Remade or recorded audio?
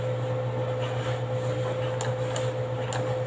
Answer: recorded